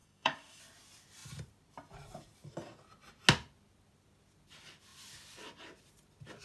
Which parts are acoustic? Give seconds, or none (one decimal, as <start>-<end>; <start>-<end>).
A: 0.6-6.4